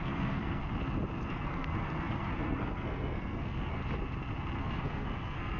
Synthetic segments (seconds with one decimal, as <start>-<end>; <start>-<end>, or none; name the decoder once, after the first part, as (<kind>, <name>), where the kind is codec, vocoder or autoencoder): 0.0-0.6 (codec, SNAC); 1.3-3.8; 4.6-5.6